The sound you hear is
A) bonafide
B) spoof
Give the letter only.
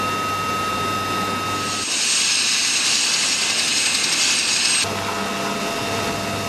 A